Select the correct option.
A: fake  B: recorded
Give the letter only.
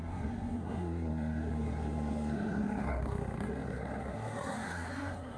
A